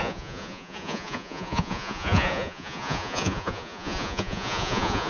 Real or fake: fake